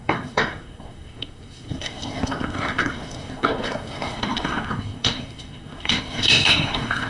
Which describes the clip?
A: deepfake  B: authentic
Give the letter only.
A